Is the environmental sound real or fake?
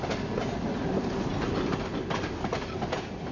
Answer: real